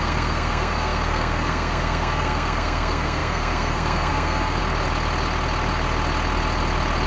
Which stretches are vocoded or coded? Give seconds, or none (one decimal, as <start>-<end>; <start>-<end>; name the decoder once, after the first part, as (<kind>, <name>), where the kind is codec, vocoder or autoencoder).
0.0-4.6 (codec, SNAC)